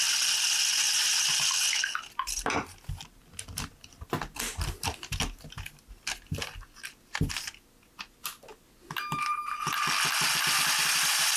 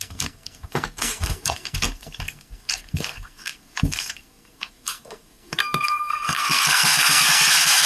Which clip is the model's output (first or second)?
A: second